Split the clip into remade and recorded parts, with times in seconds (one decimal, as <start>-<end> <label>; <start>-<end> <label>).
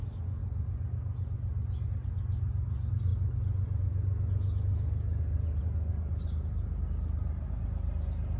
0.0-8.4 recorded